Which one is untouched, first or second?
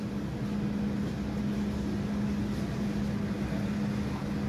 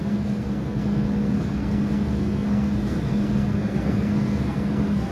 first